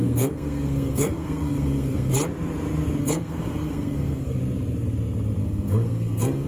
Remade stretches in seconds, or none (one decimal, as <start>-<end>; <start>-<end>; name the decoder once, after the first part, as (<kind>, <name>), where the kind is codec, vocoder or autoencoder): 0.0-2.1 (codec, SNAC); 3.0-4.4; 5.4-6.5